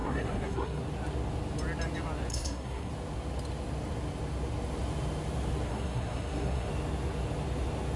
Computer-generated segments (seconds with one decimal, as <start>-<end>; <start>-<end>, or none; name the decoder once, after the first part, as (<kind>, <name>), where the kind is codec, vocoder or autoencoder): 0.0-0.8 (codec, SNAC); 2.3-2.9; 5.7-6.7